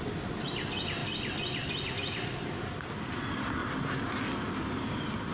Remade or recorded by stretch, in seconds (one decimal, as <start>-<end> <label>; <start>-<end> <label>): 0.0-5.3 recorded